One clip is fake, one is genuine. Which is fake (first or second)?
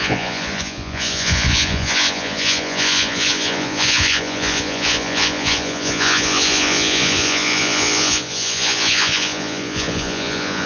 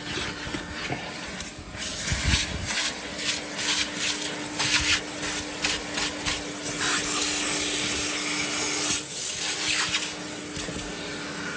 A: first